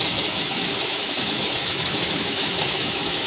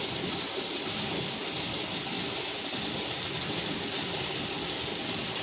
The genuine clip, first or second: second